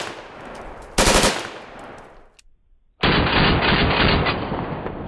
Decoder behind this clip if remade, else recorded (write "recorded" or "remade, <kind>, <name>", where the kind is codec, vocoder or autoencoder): recorded